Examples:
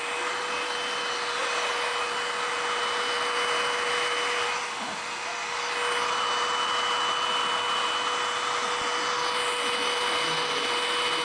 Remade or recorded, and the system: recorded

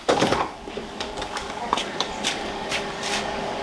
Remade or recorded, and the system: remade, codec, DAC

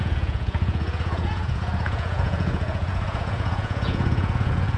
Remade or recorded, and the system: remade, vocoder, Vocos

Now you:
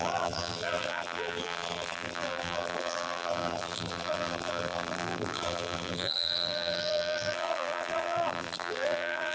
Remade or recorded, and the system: remade, vocoder, BigVGAN v2